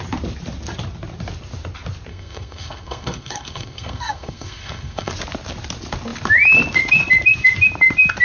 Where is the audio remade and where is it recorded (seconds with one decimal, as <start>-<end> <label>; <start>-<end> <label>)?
0.0-2.1 recorded; 2.1-5.1 remade; 5.1-8.2 recorded